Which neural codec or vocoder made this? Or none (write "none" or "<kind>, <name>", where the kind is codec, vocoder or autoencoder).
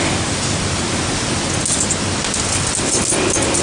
none